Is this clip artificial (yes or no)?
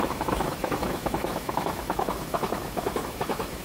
yes